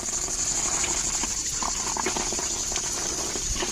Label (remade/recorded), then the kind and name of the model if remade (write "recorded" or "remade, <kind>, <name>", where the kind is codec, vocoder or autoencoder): recorded